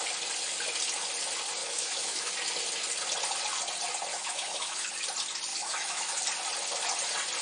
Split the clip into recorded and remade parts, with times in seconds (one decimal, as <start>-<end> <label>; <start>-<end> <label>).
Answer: 0.0-1.6 recorded; 1.6-2.3 remade; 2.3-4.1 recorded; 4.1-4.9 remade; 4.9-5.5 recorded; 5.5-6.2 remade; 6.2-7.4 recorded